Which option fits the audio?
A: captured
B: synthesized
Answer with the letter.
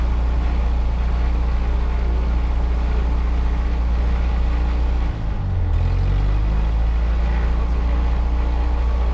A